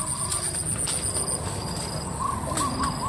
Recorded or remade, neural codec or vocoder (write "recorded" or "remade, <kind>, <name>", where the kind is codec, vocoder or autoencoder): recorded